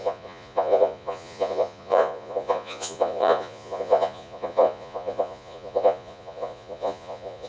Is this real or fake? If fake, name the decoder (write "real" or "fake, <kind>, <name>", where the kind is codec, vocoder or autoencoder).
fake, vocoder, Vocos